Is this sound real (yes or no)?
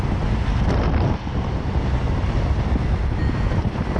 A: yes